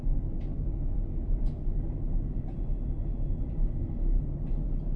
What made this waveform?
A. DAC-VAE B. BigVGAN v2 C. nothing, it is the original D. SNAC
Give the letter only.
C